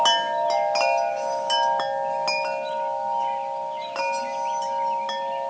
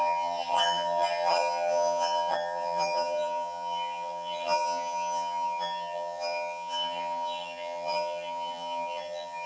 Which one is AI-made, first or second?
second